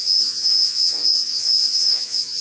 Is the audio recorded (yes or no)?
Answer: no